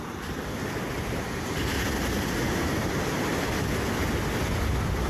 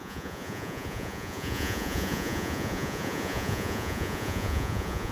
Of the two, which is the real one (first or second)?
first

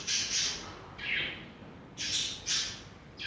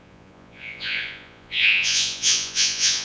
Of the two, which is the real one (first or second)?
first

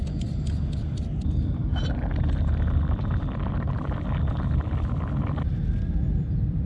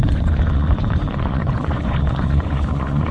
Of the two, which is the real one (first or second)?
first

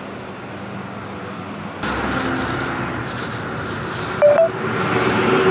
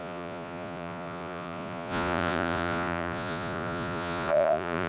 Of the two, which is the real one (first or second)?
first